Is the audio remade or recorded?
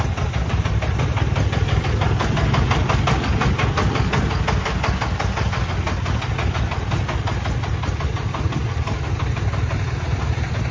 recorded